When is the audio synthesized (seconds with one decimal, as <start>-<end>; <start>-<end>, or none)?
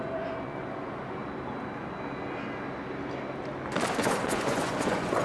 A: 0.0-1.2; 4.0-5.2